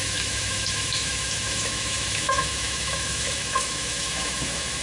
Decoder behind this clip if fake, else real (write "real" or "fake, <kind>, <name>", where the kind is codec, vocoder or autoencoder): fake, autoencoder, DAC-VAE